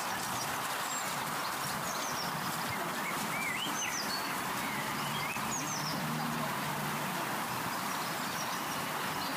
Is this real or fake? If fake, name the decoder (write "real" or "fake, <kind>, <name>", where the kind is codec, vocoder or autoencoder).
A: real